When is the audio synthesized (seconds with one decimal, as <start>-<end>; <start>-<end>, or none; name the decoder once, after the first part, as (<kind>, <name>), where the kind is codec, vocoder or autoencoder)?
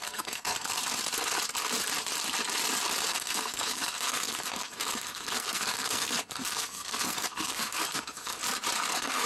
0.0-0.8 (codec, SNAC); 3.1-8.4; 8.9-9.3